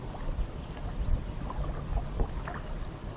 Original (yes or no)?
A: yes